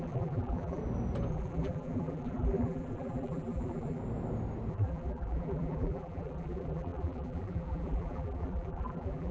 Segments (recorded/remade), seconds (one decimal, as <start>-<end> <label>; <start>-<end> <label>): 0.0-0.8 remade; 0.8-1.3 recorded; 1.3-4.0 remade; 4.0-4.7 recorded; 4.7-9.3 remade